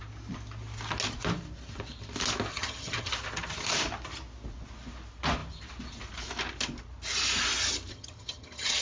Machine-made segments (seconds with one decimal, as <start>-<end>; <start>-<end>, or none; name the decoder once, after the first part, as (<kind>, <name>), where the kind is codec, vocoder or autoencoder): 2.5-3.1 (vocoder, HiFi-GAN); 7.9-8.8